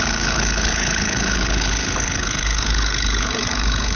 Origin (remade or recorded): remade